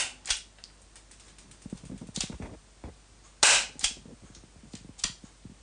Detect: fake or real real